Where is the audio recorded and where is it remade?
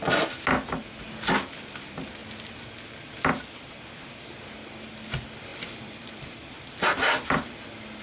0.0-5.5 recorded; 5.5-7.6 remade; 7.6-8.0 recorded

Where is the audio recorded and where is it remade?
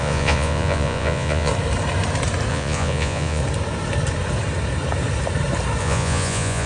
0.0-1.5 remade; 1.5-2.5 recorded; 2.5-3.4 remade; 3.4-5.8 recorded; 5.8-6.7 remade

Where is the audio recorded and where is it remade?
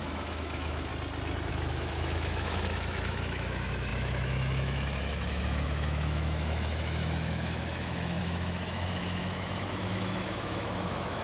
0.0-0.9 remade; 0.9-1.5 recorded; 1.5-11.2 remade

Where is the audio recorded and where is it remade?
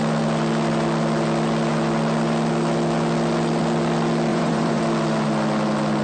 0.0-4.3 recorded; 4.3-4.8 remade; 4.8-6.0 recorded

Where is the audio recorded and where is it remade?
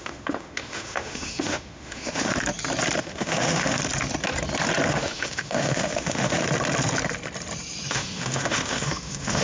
0.0-2.3 remade; 2.3-3.0 recorded; 3.0-3.8 remade; 3.8-4.9 recorded; 4.9-6.4 remade; 6.4-7.9 recorded; 7.9-9.4 remade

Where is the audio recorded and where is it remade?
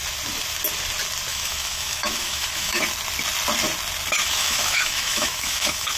0.0-1.3 recorded; 1.3-2.8 remade; 2.8-4.2 recorded; 4.2-6.0 remade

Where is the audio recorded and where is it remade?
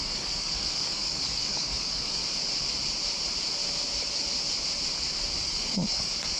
0.0-2.2 remade; 2.2-5.4 recorded; 5.4-6.4 remade